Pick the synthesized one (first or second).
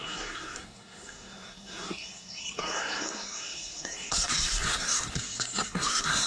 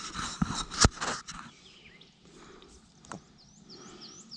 first